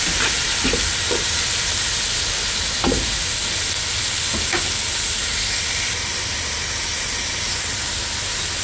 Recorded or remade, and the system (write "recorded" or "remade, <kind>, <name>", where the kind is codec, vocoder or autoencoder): recorded